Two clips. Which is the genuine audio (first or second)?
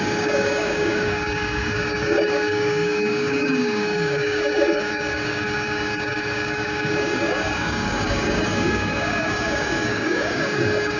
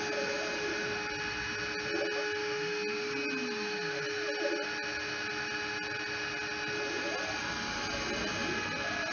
second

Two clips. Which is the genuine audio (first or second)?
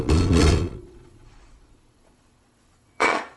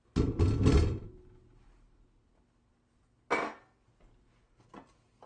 second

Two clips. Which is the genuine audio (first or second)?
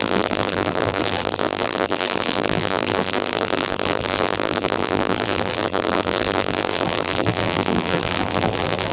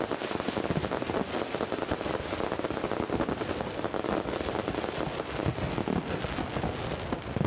second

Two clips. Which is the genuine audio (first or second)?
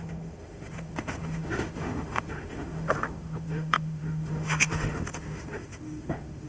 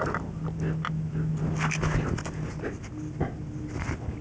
second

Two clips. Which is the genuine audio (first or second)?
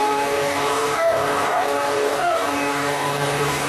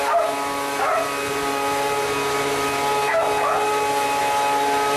second